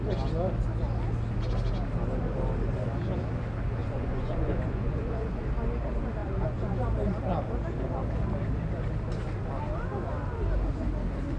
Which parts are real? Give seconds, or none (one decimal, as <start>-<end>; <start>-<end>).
0.0-3.8; 5.4-6.2; 6.8-11.4